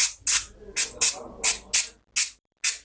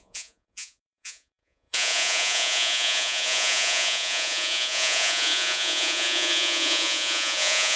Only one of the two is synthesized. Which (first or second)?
second